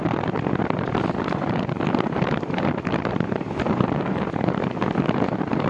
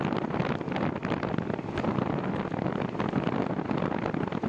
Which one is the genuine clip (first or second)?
second